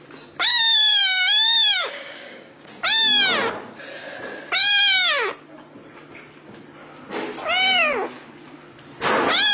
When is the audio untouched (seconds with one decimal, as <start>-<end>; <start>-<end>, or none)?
0.0-0.5; 2.7-9.5